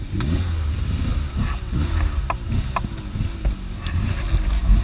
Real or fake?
real